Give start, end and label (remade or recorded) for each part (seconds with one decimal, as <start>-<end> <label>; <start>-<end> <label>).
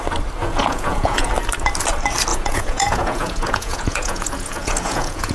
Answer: 0.0-0.4 recorded; 0.4-1.3 remade; 1.3-2.3 recorded; 2.3-5.3 remade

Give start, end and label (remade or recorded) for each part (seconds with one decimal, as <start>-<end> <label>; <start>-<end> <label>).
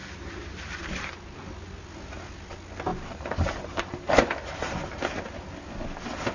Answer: 0.0-0.8 remade; 0.8-2.9 recorded; 2.9-5.2 remade; 5.2-6.3 recorded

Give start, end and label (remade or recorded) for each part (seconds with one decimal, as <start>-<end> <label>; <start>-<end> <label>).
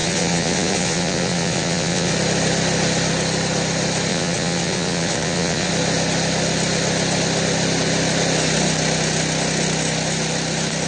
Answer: 0.0-2.1 remade; 2.1-4.1 recorded; 4.1-5.7 remade; 5.7-10.9 recorded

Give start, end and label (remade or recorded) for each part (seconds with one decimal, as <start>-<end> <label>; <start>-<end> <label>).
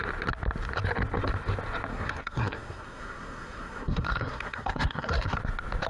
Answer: 0.0-1.9 recorded; 1.9-5.4 remade; 5.4-5.9 recorded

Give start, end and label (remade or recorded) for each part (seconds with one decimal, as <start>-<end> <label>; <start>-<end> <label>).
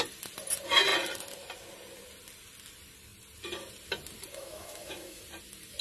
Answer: 0.0-4.3 recorded; 4.3-5.2 remade; 5.2-5.8 recorded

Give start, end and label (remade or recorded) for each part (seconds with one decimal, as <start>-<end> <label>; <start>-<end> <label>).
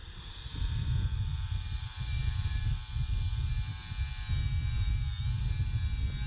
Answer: 0.0-2.8 remade; 2.8-6.3 recorded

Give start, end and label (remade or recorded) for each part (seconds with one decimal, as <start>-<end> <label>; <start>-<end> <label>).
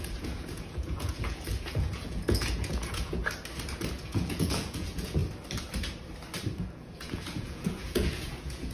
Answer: 0.0-3.2 remade; 3.2-3.9 recorded; 3.9-5.2 remade; 5.2-6.6 recorded; 6.6-8.7 remade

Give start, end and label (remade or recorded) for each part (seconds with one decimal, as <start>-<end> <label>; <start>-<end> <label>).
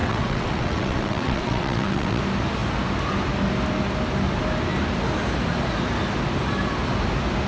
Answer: 0.0-2.2 remade; 2.2-7.5 recorded